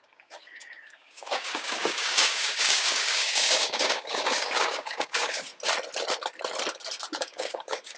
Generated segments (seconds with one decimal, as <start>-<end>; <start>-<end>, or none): 0.0-5.5; 7.2-8.0